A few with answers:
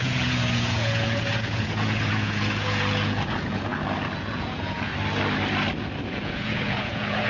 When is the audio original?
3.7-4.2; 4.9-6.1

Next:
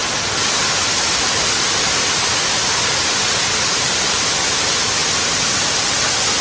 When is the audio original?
0.0-6.4

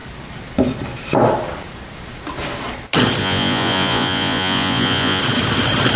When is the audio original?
0.0-3.2; 5.2-6.0

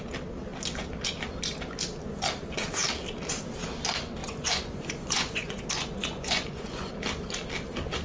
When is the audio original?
0.0-4.2; 6.9-8.0

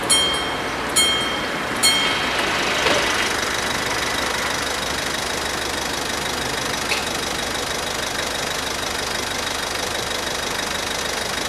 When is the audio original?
0.0-11.5

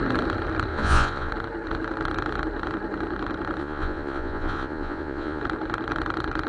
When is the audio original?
0.0-0.7; 1.3-3.6; 5.4-6.5

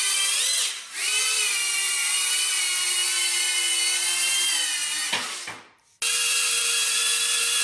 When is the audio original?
0.0-7.6